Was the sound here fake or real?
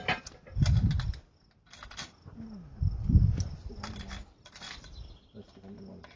real